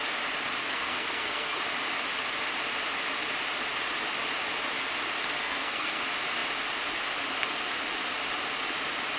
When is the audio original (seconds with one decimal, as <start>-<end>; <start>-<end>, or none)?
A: 0.0-0.6; 1.6-5.4; 6.0-9.2